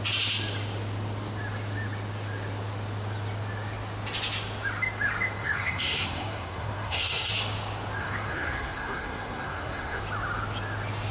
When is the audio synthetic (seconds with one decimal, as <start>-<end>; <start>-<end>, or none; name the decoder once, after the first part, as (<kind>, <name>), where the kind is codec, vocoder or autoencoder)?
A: 5.4-7.3 (codec, SNAC); 8.0-10.0